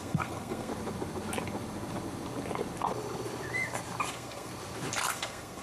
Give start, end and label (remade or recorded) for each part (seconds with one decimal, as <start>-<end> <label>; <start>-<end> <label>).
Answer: 0.0-0.7 remade; 0.7-4.1 recorded; 4.1-4.5 remade; 4.5-5.1 recorded; 5.1-5.6 remade